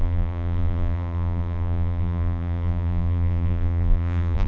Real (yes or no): no